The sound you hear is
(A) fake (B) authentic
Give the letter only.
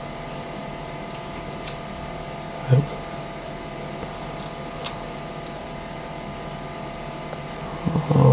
B